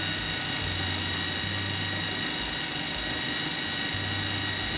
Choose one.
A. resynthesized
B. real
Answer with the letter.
B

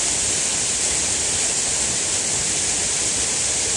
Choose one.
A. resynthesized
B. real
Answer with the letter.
A